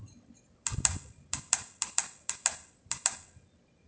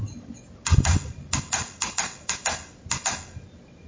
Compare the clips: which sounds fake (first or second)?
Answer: first